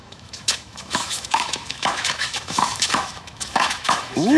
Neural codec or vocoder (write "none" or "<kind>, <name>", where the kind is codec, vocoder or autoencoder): autoencoder, DAC-VAE